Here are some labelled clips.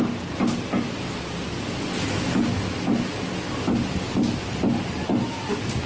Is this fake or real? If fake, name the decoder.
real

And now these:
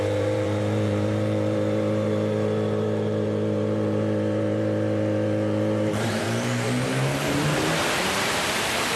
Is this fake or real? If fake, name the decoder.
fake, vocoder, BigVGAN v2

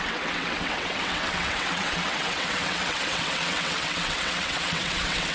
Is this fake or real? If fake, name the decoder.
fake, vocoder, WaveNeXt